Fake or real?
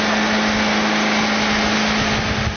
real